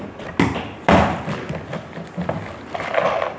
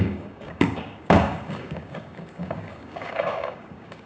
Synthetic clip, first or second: second